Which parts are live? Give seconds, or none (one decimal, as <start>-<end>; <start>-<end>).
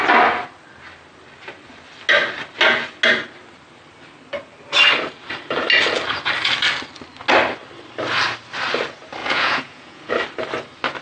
0.0-9.2; 10.1-11.0